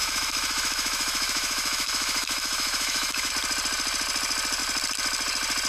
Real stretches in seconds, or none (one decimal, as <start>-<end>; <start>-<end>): 3.3-5.7